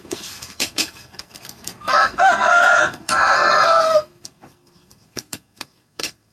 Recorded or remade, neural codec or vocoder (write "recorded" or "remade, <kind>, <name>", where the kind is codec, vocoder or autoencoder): remade, codec, SNAC